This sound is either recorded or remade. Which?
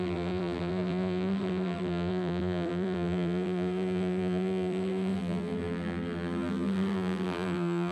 remade